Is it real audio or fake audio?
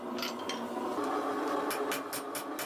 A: real